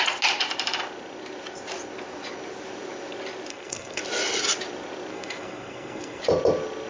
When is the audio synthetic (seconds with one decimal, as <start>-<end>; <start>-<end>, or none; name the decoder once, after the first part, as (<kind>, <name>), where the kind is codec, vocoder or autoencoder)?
3.5-4.0 (codec, SNAC); 5.1-6.2

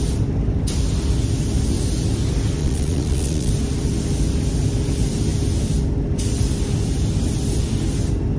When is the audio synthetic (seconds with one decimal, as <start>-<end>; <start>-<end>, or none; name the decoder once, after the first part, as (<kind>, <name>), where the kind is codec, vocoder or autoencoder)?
2.6-3.5 (vocoder, Vocos)

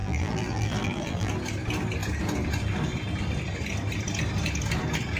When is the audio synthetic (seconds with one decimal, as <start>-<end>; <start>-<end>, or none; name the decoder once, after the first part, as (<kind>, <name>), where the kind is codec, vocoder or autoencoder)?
0.0-1.3 (vocoder, BigVGAN v2)